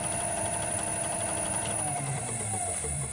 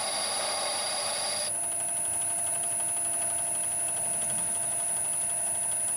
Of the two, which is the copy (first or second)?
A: first